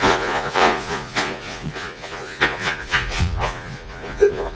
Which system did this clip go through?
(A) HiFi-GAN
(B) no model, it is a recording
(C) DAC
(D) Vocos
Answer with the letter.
D